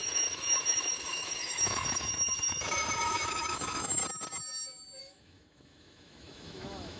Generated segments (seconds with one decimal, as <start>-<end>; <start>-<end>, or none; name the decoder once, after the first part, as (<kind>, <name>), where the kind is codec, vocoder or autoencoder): 0.0-4.0 (autoencoder, DAC-VAE); 5.0-7.0